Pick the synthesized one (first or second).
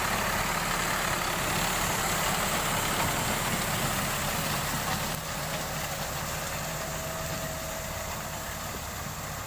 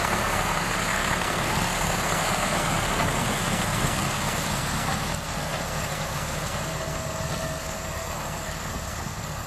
second